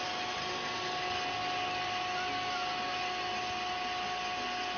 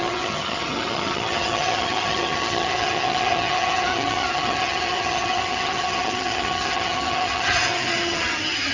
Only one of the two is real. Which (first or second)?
first